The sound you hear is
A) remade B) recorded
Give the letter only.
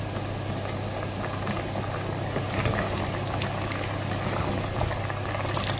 B